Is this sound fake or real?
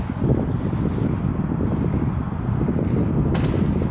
real